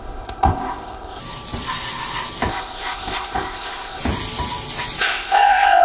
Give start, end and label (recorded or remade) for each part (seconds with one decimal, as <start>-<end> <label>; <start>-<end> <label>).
0.0-1.2 remade; 1.2-2.5 recorded; 2.5-4.0 remade; 4.0-5.0 recorded; 5.0-5.8 remade